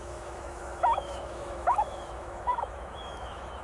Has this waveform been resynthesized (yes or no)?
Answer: yes